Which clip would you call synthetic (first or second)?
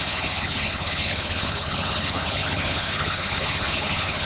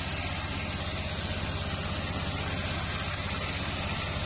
first